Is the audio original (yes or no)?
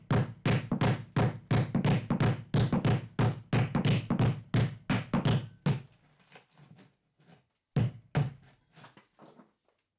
yes